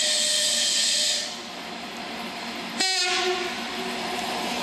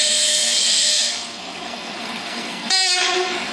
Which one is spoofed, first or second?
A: second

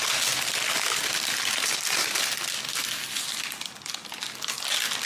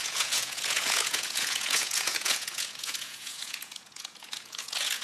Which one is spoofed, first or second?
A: second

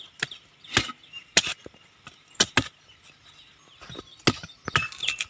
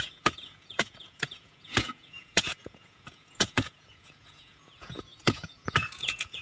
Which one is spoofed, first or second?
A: second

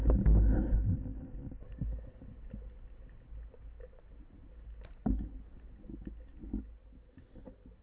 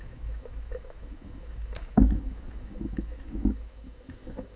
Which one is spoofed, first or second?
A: second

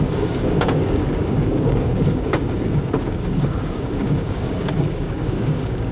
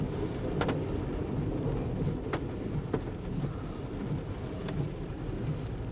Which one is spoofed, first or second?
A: first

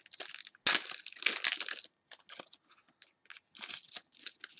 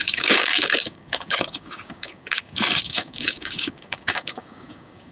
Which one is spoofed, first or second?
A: second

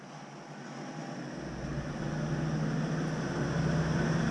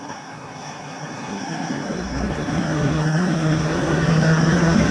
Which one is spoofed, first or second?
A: second